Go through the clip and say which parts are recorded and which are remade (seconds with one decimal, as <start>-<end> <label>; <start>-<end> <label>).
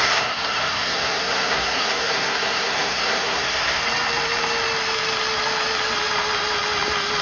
0.0-3.8 remade; 3.8-7.2 recorded